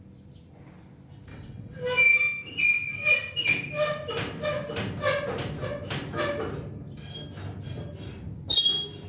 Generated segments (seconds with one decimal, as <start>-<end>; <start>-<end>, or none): 1.3-1.8